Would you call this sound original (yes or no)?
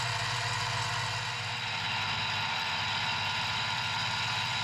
yes